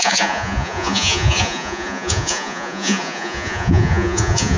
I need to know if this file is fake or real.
fake